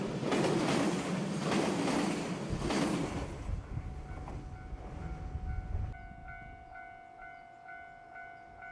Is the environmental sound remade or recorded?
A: recorded